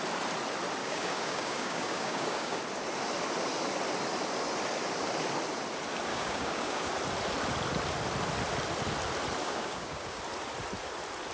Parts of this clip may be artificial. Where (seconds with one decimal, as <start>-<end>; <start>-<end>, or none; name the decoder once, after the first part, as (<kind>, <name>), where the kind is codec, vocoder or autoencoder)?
0.8-2.6 (codec, DAC); 6.1-6.9; 9.4-10.2